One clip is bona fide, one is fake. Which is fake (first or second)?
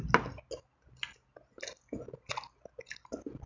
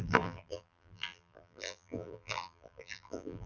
second